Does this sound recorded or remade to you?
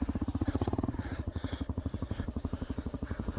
remade